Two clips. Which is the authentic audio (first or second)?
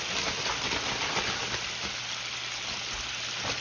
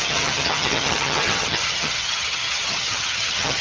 first